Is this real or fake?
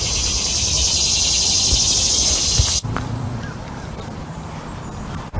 fake